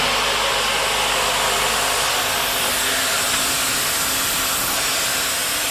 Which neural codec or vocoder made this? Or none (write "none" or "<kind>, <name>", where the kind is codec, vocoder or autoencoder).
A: none